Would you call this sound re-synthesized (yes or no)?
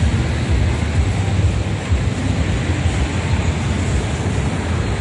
no